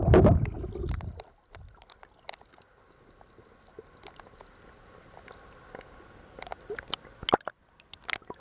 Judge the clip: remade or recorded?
recorded